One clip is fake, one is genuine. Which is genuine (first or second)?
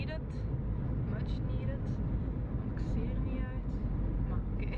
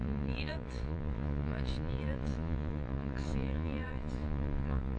first